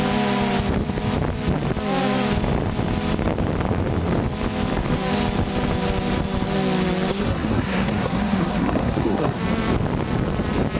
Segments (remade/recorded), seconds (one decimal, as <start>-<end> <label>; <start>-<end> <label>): 0.0-7.1 recorded; 7.1-9.4 remade; 9.4-10.8 recorded

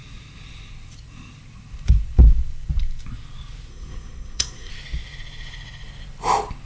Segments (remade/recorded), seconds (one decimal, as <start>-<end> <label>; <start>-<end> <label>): 0.0-3.7 recorded; 3.7-4.7 remade; 4.7-6.7 recorded

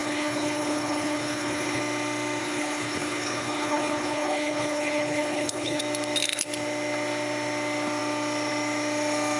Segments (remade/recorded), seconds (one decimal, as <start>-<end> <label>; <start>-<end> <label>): 0.0-1.8 remade; 1.8-2.4 recorded; 2.4-5.8 remade; 5.8-9.4 recorded

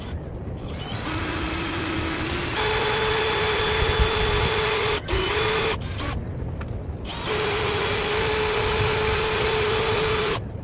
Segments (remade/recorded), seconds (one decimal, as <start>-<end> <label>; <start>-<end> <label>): 0.0-10.6 recorded

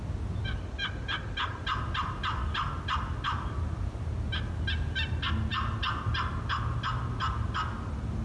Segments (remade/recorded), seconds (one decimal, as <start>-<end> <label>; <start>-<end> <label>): 0.0-8.2 recorded

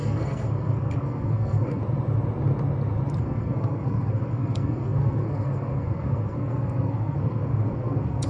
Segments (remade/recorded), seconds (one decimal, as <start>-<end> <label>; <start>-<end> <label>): 0.0-1.8 remade; 1.8-3.2 recorded; 3.2-8.3 remade

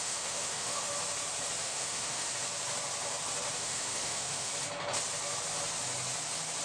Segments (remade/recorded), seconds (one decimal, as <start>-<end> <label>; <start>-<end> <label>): 0.0-0.9 remade; 0.9-1.6 recorded; 1.6-2.3 remade; 2.3-3.6 recorded; 3.6-4.5 remade; 4.5-6.6 recorded

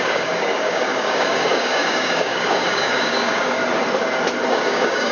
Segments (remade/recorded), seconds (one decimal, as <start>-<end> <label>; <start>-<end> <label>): 0.0-3.6 remade; 3.6-4.5 recorded; 4.5-5.1 remade